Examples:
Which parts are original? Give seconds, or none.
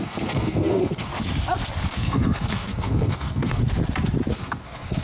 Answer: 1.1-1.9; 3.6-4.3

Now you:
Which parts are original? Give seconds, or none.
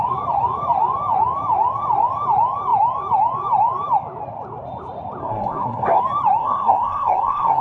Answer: 0.0-5.2; 6.0-6.4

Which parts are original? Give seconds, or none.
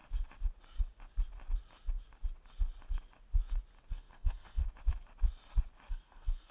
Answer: 0.0-3.9; 4.6-5.9